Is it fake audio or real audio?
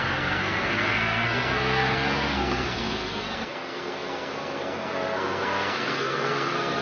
fake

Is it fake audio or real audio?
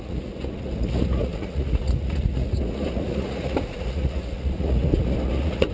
fake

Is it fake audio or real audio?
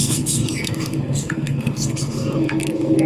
fake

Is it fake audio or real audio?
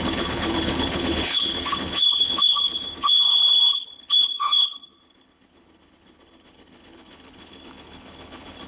fake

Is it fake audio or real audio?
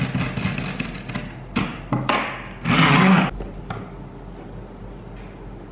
real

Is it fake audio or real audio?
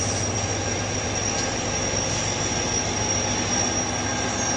real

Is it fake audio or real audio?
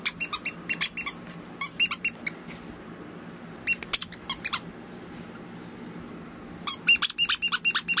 real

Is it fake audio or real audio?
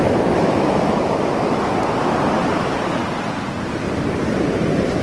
real